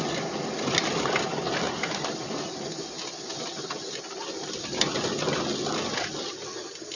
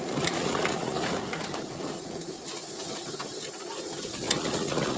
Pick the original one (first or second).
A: first